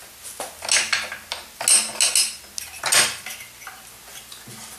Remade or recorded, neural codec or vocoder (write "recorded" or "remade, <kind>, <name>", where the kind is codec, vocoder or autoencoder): recorded